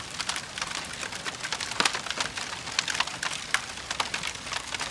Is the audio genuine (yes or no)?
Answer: yes